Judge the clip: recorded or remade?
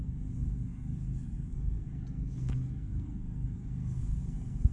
remade